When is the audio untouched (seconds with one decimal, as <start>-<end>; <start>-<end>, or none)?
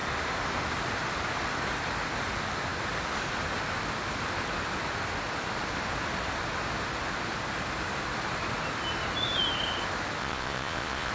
0.0-10.2